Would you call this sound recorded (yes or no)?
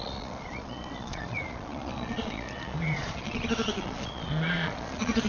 no